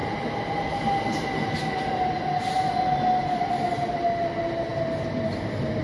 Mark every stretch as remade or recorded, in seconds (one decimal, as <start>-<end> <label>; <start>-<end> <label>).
0.0-5.8 recorded